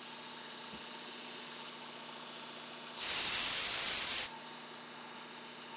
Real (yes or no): yes